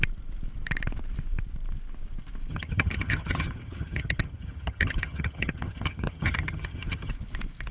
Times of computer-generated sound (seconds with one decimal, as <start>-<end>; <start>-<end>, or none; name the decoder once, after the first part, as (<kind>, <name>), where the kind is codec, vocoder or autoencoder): 2.5-7.1 (vocoder, HiFi-GAN)